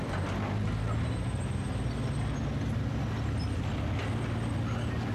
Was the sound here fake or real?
real